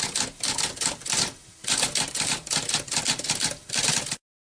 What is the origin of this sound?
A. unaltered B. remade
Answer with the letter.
A